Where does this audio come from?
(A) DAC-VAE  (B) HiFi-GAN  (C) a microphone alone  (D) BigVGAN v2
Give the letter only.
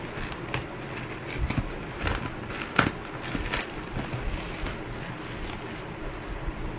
C